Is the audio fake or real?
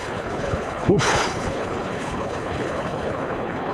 fake